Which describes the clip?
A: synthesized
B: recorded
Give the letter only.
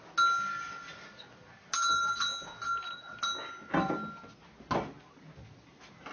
B